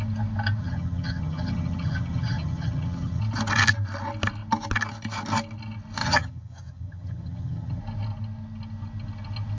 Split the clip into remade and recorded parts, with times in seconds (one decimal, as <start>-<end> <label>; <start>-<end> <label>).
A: 0.0-0.6 recorded; 0.6-3.2 remade; 3.2-6.0 recorded; 6.0-7.8 remade; 7.8-9.6 recorded